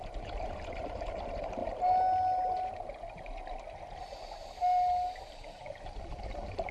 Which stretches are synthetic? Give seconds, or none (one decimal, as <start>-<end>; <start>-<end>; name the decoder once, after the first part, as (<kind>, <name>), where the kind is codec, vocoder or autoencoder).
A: 0.0-1.6 (vocoder, BigVGAN v2); 5.2-6.7